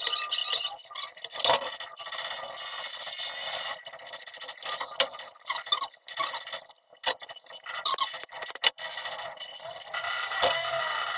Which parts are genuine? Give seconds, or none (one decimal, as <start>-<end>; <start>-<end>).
0.0-11.2